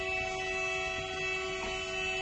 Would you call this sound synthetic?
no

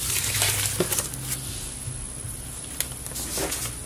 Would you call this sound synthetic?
no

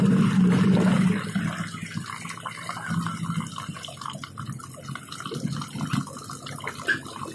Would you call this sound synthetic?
no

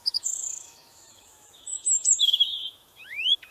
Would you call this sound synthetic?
yes